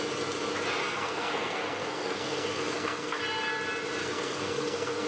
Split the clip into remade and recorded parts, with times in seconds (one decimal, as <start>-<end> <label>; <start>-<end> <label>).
0.0-0.8 recorded; 0.8-3.2 remade; 3.2-4.0 recorded; 4.0-5.1 remade